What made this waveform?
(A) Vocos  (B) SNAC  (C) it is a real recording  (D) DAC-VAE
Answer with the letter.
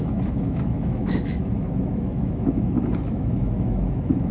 D